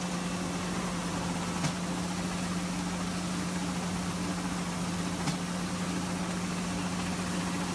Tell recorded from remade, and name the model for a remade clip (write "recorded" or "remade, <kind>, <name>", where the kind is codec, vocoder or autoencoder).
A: recorded